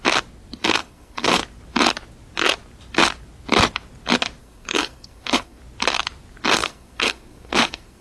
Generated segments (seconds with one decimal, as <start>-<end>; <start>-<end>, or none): 0.6-1.4; 4.4-5.6; 6.6-8.0